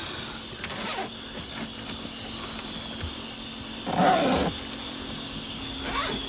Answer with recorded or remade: recorded